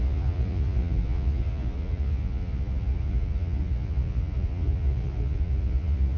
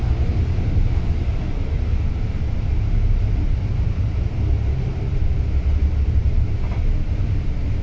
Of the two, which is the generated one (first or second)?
first